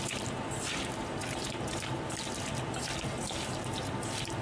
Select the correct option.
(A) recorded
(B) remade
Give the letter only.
A